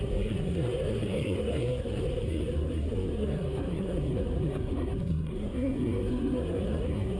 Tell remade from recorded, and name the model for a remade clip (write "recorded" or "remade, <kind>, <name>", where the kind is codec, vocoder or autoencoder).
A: remade, codec, SNAC